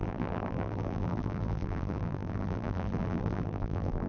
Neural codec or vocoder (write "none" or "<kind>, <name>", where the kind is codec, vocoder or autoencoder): vocoder, BigVGAN v2